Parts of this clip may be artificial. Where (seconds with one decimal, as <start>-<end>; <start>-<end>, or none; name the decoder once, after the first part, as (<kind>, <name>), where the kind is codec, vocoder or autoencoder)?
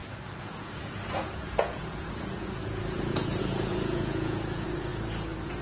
0.0-4.9 (vocoder, Vocos)